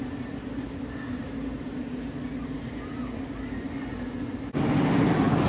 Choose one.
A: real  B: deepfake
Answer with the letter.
A